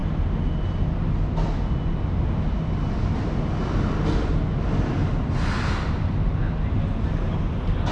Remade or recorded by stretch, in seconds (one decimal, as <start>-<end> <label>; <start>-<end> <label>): 0.0-7.9 recorded